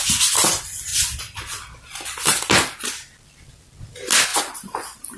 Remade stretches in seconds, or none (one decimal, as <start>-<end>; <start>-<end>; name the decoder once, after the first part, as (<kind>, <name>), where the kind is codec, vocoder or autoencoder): none